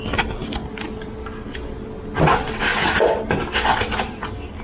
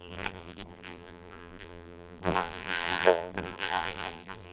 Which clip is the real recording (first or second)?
first